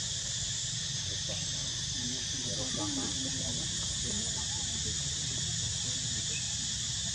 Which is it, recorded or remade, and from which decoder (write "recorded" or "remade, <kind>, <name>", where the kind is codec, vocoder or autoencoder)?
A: recorded